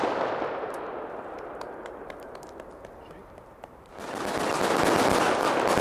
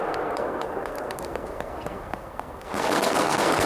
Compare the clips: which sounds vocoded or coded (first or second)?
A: second